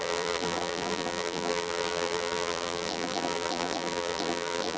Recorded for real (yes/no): no